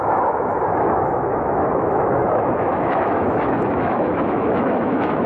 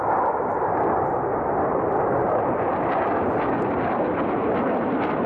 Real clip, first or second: second